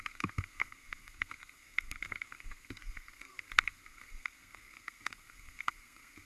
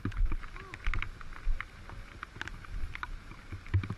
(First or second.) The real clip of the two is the second